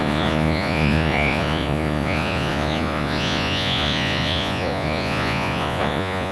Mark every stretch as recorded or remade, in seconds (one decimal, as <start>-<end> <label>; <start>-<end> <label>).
0.0-6.3 remade

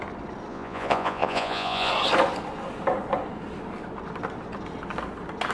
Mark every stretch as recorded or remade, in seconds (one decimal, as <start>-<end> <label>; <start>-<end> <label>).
0.0-0.5 recorded; 0.5-1.9 remade; 1.9-5.5 recorded

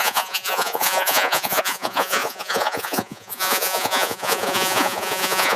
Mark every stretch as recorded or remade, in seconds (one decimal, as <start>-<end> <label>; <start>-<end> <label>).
0.0-5.6 remade

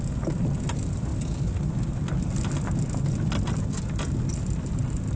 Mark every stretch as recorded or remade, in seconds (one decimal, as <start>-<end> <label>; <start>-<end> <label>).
0.0-5.2 recorded

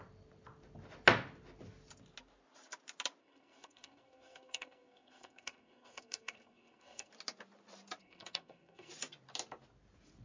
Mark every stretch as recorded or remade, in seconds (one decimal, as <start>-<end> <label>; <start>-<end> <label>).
0.0-3.2 recorded; 3.2-7.1 remade; 7.1-8.0 recorded; 8.0-8.9 remade; 8.9-10.2 recorded

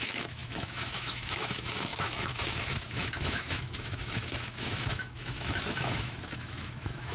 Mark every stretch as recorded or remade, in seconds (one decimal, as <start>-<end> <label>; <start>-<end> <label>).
0.0-7.1 remade

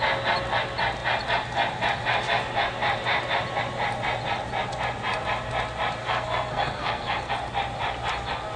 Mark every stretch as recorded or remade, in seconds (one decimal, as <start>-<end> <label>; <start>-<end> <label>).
0.0-6.0 recorded; 6.0-7.3 remade; 7.3-8.6 recorded

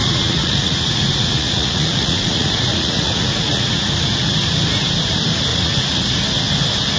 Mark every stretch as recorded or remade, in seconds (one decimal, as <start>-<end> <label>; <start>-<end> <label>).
0.0-3.9 remade; 3.9-5.5 recorded; 5.5-6.1 remade; 6.1-7.0 recorded